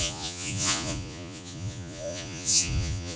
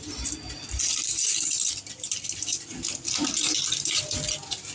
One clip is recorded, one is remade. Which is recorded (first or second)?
second